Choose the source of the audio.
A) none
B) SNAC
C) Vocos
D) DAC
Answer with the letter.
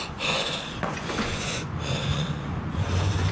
C